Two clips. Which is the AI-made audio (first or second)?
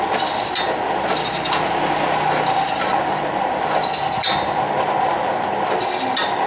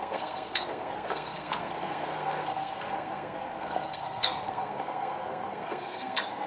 second